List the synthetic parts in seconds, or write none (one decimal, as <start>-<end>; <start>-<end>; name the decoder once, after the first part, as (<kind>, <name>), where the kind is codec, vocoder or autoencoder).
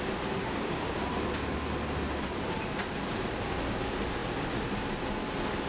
0.4-1.0 (codec, DAC)